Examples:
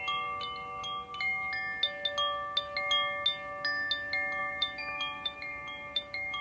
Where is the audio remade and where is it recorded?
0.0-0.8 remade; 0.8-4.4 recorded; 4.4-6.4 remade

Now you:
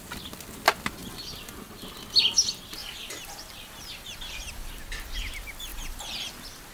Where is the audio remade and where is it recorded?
0.0-1.0 recorded; 1.0-1.7 remade; 1.7-2.8 recorded; 2.8-4.8 remade; 4.8-5.7 recorded; 5.7-6.7 remade